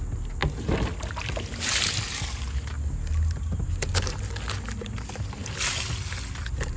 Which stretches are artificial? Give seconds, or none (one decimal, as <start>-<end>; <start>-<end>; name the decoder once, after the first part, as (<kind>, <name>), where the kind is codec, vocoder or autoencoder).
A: none